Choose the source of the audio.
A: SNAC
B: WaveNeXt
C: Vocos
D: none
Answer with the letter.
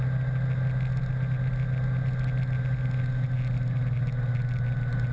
D